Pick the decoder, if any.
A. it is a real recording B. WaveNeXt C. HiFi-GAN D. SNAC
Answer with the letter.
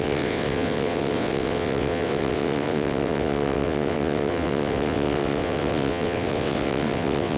B